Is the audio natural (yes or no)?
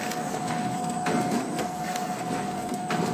no